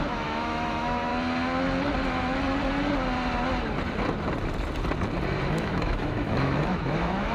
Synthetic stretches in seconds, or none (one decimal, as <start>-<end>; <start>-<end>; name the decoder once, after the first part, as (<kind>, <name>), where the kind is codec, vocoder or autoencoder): 0.0-1.1 (autoencoder, DAC-VAE); 5.5-7.3